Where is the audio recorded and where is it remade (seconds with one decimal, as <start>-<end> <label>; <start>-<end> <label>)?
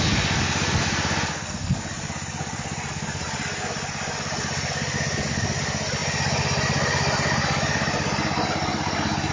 0.0-1.3 recorded; 1.3-1.8 remade; 1.8-9.3 recorded